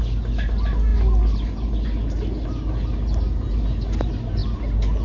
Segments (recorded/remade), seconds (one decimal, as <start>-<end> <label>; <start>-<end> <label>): 0.0-5.0 recorded